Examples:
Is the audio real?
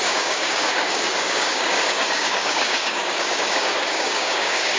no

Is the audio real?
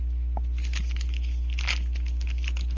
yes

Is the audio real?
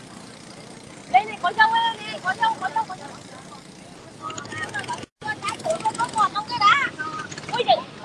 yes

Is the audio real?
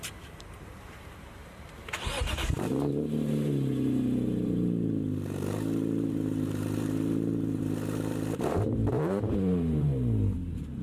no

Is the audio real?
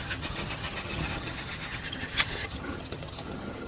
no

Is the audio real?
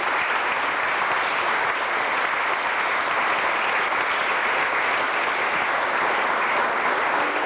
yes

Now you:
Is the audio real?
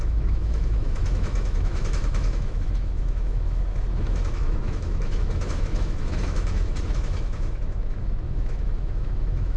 no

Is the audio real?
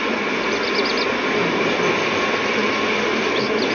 yes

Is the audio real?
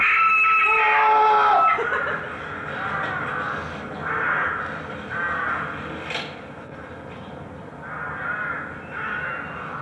yes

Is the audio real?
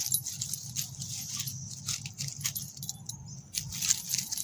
yes